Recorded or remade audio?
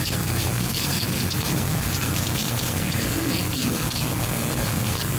remade